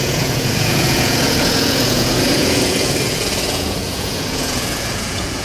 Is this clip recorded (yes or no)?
no